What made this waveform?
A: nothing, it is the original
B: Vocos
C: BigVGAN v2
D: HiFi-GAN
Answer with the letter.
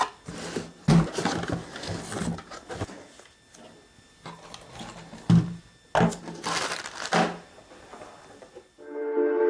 A